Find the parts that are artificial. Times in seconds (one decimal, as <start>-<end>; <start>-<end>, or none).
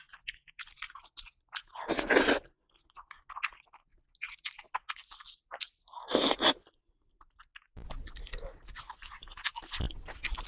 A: none